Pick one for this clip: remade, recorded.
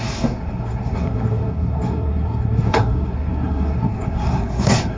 remade